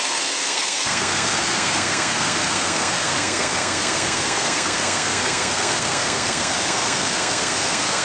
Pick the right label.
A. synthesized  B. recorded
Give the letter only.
A